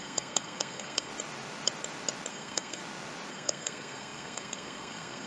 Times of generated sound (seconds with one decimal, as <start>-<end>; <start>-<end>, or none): 0.0-1.1; 2.3-2.8; 3.3-5.3